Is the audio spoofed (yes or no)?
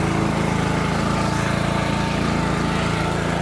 no